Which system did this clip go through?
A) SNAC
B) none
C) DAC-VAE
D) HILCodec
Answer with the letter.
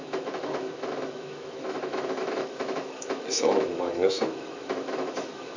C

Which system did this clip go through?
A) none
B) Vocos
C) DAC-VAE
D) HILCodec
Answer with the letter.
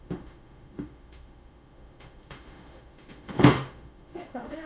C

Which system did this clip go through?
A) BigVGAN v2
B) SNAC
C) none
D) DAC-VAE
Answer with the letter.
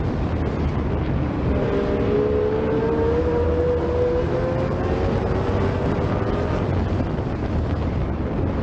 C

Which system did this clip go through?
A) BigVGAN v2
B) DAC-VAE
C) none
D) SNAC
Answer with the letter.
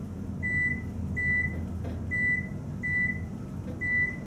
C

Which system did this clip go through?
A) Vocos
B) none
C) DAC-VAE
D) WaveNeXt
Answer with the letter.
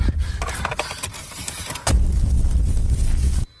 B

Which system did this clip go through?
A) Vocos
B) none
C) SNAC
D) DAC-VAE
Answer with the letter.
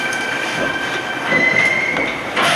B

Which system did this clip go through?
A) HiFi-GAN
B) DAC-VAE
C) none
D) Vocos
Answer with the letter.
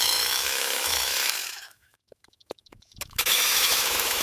B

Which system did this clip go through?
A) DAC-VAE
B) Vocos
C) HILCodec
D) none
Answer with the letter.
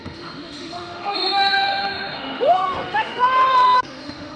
A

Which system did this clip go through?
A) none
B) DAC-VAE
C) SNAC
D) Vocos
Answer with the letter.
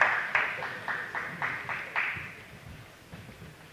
A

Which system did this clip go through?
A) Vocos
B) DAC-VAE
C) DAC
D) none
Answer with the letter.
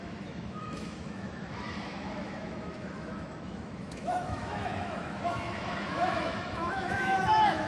B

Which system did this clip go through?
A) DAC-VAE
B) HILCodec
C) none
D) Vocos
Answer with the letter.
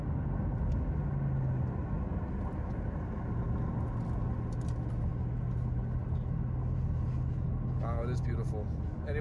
C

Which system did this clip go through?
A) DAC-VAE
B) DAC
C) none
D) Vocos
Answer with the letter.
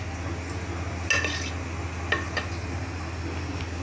C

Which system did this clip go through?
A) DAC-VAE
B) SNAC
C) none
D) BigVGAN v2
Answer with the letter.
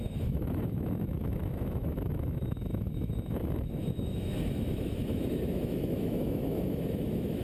A